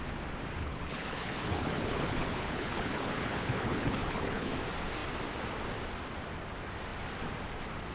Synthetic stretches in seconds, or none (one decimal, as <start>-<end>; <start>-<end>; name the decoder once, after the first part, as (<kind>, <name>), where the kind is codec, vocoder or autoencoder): 0.6-4.5 (codec, HILCodec)